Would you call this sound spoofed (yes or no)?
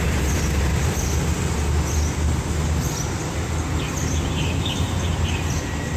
no